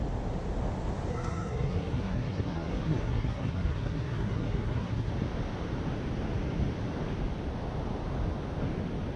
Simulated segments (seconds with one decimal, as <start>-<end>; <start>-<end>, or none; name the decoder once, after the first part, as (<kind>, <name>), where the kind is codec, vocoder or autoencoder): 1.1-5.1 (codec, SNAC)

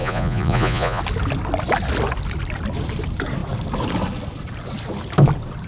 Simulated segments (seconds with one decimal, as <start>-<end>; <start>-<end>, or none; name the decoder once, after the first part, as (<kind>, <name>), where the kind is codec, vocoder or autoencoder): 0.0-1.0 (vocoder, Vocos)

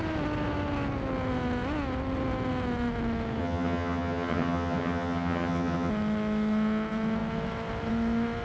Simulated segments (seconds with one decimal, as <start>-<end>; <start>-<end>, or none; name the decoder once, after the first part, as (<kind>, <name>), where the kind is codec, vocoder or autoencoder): 3.4-5.9 (vocoder, HiFi-GAN)

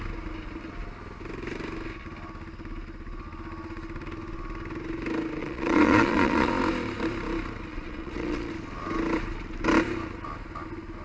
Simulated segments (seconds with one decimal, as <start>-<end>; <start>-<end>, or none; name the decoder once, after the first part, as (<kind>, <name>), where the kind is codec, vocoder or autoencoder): 5.4-6.5 (vocoder, Vocos); 7.7-8.5